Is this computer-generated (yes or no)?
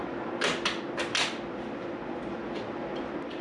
no